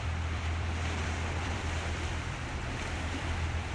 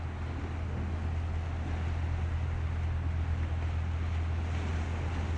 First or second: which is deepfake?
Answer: first